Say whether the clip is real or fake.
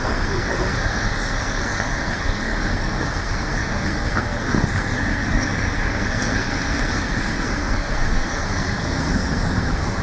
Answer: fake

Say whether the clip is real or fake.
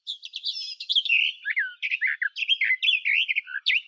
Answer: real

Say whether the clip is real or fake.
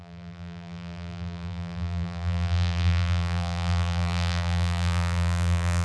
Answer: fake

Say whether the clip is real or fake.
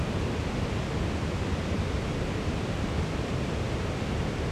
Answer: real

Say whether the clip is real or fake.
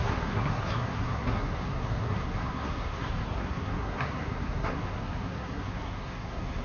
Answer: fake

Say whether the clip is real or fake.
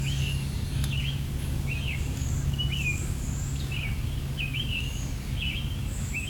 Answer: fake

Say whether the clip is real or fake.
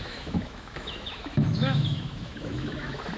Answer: fake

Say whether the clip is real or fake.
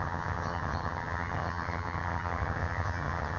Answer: fake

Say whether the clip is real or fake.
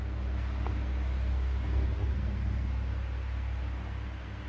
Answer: fake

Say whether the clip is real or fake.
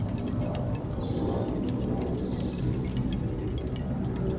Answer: real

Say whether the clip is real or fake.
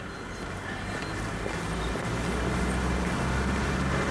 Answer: real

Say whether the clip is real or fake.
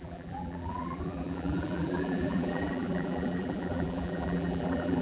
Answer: fake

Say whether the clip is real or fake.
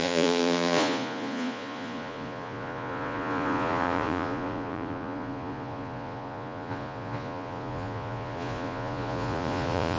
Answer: fake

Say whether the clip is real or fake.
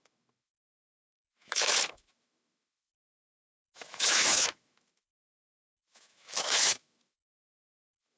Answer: fake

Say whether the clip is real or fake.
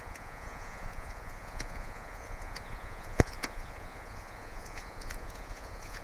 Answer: fake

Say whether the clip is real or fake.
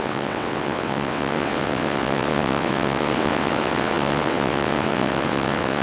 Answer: fake